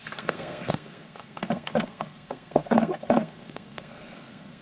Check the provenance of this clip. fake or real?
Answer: fake